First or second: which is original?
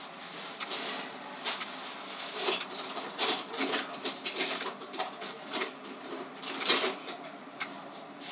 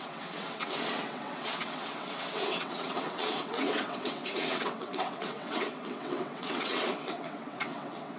first